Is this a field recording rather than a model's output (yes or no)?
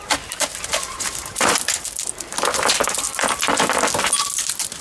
yes